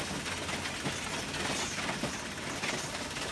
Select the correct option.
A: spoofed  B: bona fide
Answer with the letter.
B